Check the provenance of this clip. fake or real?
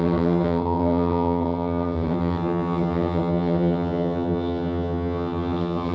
fake